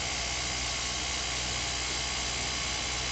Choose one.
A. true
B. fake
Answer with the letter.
A